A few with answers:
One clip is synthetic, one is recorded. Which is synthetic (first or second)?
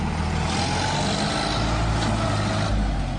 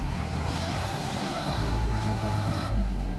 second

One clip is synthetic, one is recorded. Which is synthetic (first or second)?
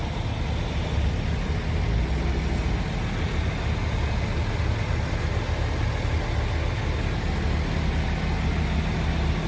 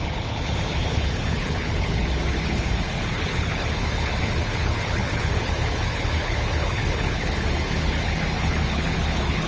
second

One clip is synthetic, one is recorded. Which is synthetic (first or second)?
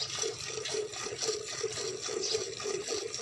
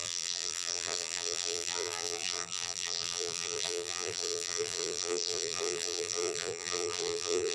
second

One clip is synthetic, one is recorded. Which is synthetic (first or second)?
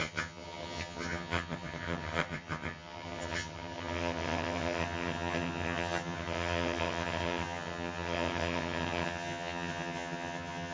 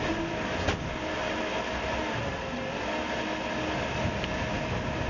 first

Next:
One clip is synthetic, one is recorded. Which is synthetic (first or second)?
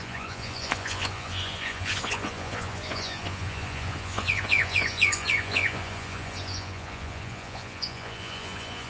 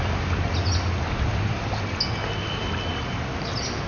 first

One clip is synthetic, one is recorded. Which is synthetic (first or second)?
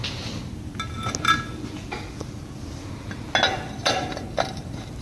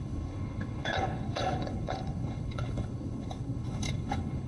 second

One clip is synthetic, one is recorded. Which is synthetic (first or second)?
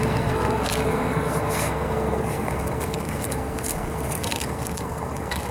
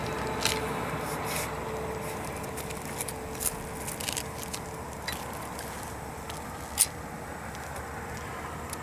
first